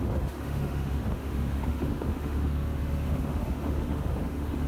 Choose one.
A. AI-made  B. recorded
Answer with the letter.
A